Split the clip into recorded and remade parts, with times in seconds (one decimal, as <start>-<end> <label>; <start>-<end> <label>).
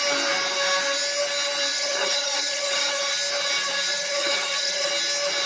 0.0-1.7 recorded; 1.7-3.0 remade; 3.0-3.9 recorded; 3.9-4.9 remade; 4.9-5.5 recorded